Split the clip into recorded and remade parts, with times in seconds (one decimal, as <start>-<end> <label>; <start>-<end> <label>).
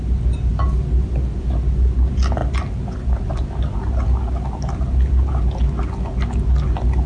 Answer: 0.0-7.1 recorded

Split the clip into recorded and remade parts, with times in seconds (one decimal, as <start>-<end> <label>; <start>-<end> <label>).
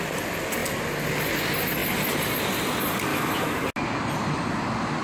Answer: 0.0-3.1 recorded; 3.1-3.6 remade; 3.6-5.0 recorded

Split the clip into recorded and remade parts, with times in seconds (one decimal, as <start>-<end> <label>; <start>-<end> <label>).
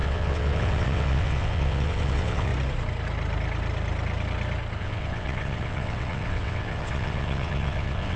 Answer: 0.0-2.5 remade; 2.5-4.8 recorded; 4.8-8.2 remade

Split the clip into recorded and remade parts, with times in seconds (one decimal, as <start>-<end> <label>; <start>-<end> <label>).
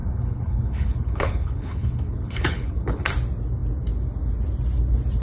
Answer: 0.0-3.1 remade; 3.1-5.2 recorded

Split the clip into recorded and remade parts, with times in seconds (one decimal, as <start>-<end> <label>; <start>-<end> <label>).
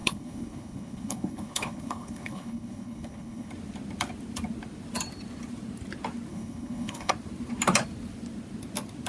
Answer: 0.0-3.5 remade; 3.5-6.3 recorded; 6.3-7.1 remade; 7.1-9.1 recorded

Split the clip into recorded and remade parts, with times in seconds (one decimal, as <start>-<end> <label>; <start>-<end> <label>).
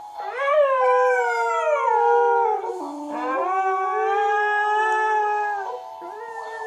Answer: 0.0-6.7 recorded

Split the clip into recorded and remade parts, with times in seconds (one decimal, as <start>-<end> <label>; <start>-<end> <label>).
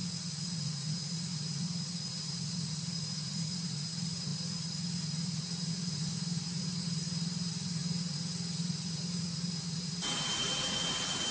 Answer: 0.0-11.3 remade